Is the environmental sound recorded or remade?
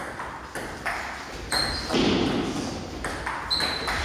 recorded